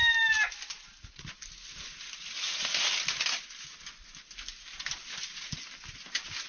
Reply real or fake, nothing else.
real